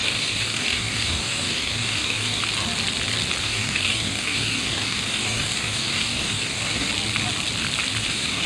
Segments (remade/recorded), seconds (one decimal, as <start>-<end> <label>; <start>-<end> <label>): 0.0-2.4 remade; 2.4-3.4 recorded; 3.4-6.9 remade; 6.9-8.0 recorded; 8.0-8.5 remade